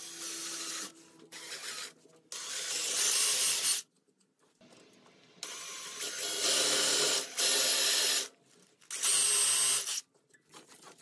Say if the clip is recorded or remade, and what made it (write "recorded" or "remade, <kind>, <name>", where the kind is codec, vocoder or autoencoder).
recorded